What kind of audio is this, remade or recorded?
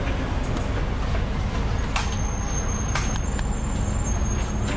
recorded